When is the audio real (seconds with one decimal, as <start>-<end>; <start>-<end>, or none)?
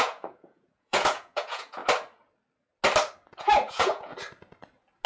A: 1.8-3.4; 4.1-5.1